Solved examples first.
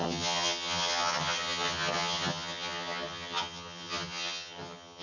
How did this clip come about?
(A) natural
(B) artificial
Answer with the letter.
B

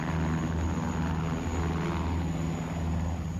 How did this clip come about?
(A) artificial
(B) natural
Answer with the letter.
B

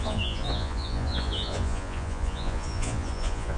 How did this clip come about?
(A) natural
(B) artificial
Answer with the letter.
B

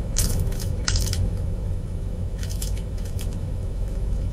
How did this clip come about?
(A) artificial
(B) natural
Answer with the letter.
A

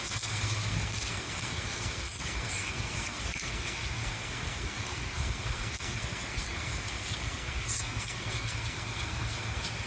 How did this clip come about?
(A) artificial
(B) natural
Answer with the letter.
A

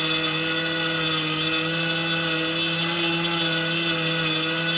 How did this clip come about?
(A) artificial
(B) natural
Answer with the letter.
B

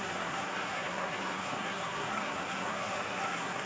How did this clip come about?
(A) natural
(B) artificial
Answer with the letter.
B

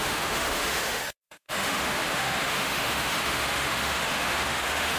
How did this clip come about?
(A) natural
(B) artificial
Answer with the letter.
B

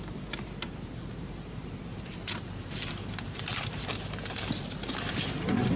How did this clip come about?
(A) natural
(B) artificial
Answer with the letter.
B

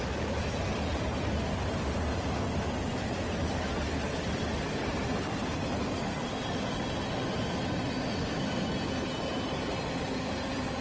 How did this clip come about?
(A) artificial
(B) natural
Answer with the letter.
B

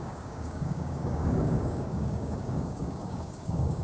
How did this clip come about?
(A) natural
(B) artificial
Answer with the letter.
B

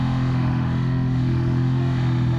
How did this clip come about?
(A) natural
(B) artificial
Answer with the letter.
B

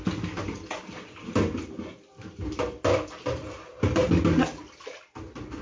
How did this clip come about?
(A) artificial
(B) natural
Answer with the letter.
B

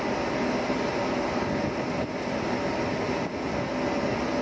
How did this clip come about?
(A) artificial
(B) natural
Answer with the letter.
B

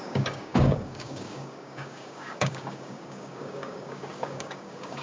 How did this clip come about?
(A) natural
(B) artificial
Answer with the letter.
B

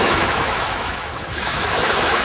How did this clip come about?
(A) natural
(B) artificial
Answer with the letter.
B